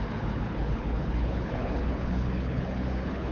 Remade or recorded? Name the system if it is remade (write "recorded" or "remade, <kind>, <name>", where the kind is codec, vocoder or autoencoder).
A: remade, codec, HILCodec